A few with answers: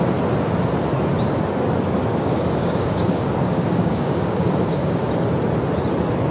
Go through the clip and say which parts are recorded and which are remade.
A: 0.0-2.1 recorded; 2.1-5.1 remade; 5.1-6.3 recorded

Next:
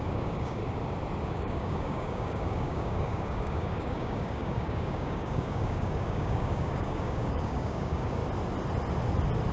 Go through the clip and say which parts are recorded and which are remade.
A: 0.0-0.6 remade; 0.6-1.2 recorded; 1.2-8.2 remade; 8.2-9.5 recorded

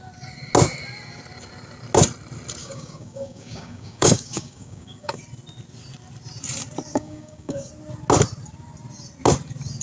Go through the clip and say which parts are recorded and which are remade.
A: 0.0-2.6 recorded; 2.6-5.2 remade; 5.2-6.9 recorded; 6.9-7.7 remade; 7.7-9.8 recorded

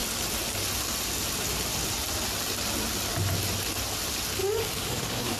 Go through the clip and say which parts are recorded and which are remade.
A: 0.0-4.4 recorded; 4.4-5.4 remade

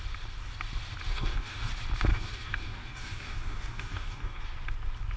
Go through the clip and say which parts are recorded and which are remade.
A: 0.0-1.1 recorded; 1.1-1.7 remade; 1.7-2.1 recorded; 2.1-4.4 remade; 4.4-5.2 recorded

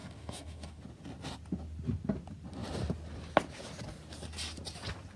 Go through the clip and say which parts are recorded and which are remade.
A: 0.0-0.8 remade; 0.8-5.2 recorded